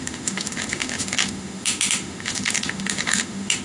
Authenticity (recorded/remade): remade